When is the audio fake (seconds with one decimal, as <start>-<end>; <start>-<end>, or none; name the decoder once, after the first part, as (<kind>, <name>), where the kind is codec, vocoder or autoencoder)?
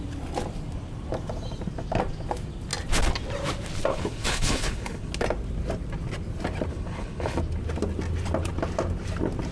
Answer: 3.9-5.1 (codec, HILCodec); 6.7-7.4